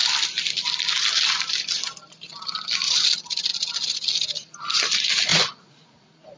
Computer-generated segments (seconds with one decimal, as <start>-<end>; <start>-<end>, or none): 5.3-6.0